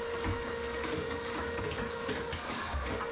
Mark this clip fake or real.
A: fake